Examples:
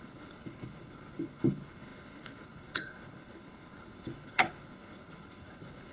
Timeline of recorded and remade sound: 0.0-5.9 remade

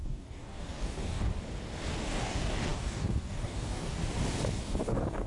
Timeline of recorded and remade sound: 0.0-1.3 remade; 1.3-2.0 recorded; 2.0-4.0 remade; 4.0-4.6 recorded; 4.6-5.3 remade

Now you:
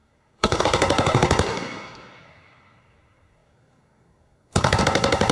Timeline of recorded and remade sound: 0.0-5.3 remade